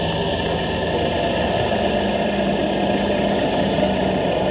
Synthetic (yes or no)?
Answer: no